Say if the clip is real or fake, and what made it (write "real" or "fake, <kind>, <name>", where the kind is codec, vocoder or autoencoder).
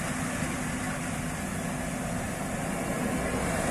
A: real